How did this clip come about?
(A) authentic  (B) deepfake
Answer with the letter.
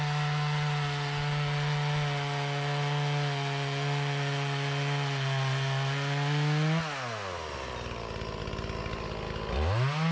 A